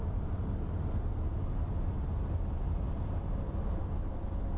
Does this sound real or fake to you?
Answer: real